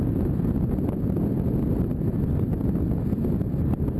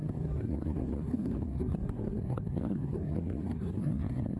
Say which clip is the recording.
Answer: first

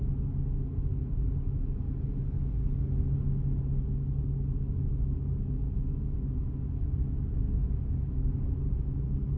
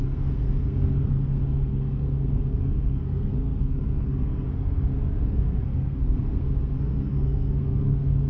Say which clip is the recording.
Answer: first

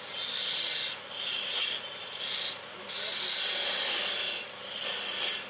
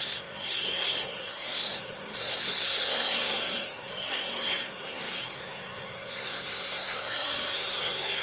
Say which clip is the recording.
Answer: first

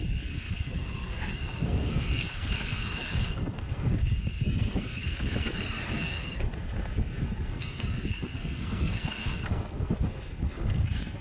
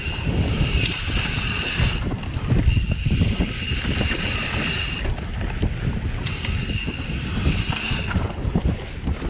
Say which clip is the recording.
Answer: second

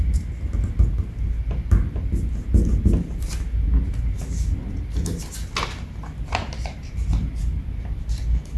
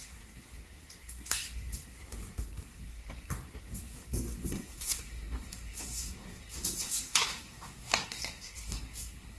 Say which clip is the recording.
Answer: first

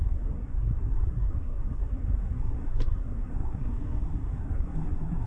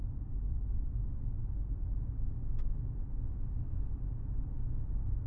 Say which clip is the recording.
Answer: second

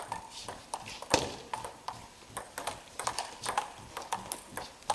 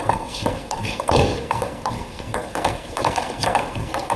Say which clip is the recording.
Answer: first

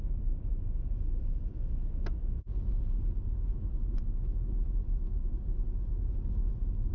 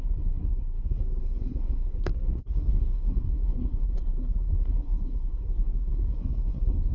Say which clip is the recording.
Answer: first